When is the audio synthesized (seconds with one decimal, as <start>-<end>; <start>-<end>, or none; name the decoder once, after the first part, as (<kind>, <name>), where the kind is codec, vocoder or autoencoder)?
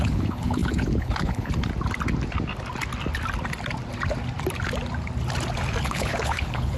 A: 0.0-1.7 (codec, HILCodec); 5.8-6.8